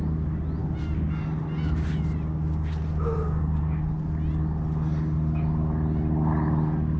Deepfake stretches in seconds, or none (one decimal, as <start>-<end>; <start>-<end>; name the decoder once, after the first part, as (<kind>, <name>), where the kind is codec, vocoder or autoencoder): none